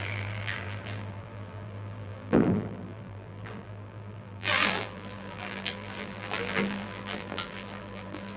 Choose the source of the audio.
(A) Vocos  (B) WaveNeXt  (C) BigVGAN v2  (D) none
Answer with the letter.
C